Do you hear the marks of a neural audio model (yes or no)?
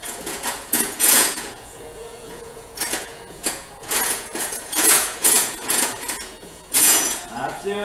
yes